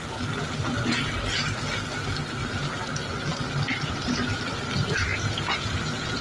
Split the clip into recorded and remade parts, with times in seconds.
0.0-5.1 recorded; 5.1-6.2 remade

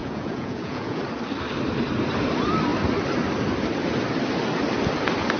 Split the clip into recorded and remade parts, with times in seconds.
0.0-1.0 remade; 1.0-5.4 recorded

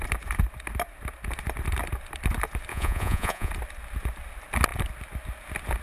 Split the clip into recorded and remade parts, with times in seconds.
0.0-2.7 recorded; 2.7-3.5 remade; 3.5-5.8 recorded

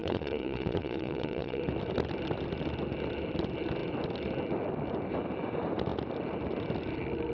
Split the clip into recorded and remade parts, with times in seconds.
0.0-1.6 remade; 1.6-7.3 recorded

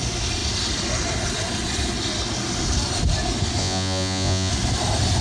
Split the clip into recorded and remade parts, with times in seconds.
0.0-3.6 recorded; 3.6-4.5 remade; 4.5-5.2 recorded

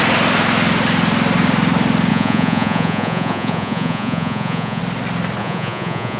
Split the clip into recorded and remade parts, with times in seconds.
0.0-2.1 recorded; 2.1-4.8 remade; 4.8-5.4 recorded; 5.4-6.2 remade

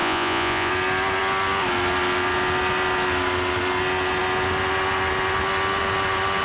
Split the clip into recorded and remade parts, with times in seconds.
0.0-0.7 remade; 0.7-6.4 recorded